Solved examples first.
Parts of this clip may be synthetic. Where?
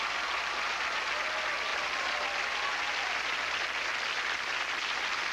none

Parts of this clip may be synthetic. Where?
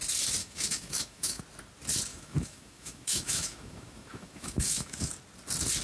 0.4-1.4 (autoencoder, DAC-VAE); 2.1-5.1